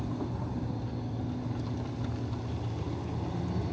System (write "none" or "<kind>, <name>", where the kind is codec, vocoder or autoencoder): none